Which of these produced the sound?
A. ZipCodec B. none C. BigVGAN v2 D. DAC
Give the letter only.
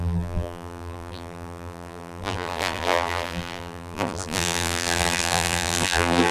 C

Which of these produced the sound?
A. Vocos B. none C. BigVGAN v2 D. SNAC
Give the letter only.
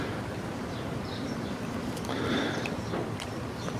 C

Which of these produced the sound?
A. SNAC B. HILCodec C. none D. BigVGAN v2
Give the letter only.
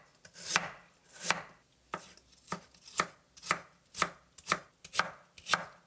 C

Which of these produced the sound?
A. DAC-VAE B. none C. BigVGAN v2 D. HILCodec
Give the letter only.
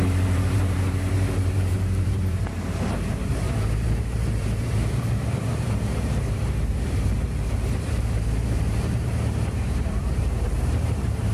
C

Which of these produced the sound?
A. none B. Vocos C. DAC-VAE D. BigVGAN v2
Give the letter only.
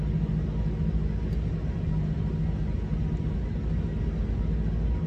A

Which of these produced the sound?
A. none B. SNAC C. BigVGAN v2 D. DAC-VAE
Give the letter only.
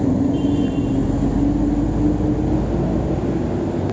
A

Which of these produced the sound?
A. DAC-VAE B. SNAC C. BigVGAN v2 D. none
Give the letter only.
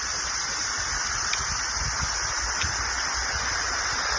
D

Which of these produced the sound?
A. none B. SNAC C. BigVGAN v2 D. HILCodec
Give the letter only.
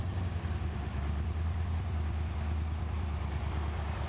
C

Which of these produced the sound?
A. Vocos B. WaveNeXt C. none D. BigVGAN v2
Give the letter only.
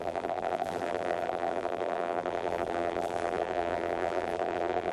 D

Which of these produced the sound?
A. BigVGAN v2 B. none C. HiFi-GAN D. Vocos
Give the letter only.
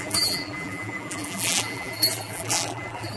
A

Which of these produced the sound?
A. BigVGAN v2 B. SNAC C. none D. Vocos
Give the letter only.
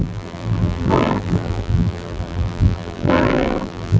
A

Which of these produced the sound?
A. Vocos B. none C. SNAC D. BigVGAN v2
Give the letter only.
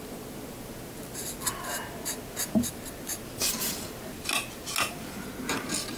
B